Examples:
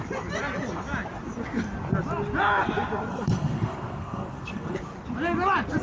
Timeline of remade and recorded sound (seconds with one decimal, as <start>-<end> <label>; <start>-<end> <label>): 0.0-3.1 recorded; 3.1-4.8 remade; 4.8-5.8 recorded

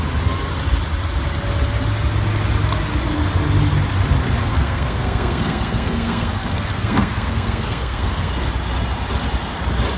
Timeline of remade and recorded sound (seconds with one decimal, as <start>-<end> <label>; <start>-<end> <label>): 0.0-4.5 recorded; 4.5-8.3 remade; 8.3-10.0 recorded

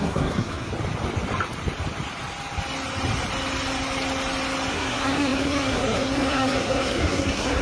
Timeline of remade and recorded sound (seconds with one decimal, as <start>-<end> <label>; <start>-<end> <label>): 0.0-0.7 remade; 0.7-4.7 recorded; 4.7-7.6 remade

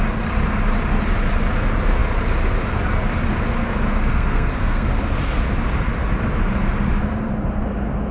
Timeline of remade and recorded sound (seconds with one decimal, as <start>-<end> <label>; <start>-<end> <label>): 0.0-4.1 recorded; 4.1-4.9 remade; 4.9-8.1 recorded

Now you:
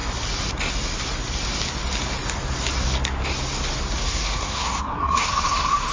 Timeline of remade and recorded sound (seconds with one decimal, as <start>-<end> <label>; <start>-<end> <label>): 0.0-4.0 recorded; 4.0-5.9 remade

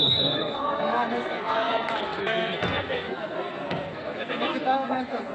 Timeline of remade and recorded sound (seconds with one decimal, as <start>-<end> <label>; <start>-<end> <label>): 0.0-5.3 remade